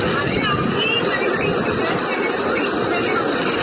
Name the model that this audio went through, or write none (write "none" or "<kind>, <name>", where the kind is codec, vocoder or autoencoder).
none